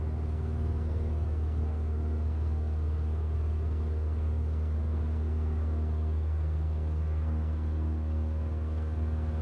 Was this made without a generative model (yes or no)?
no